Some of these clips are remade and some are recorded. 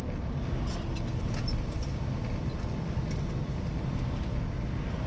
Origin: recorded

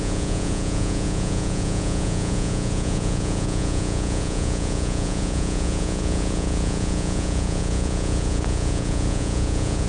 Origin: remade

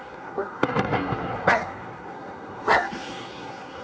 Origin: remade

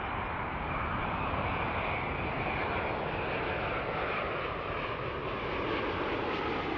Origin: recorded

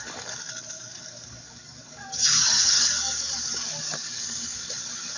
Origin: remade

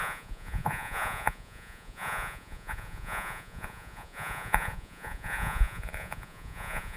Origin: remade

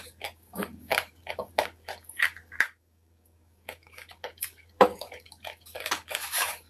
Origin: remade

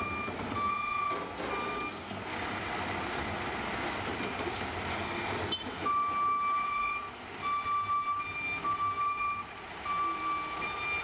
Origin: recorded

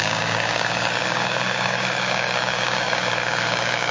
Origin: remade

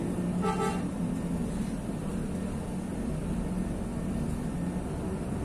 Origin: recorded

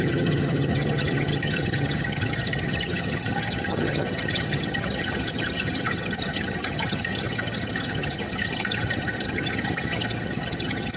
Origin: remade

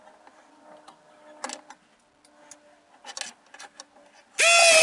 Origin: recorded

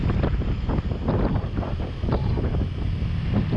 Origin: recorded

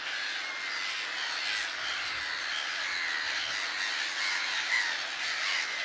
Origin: recorded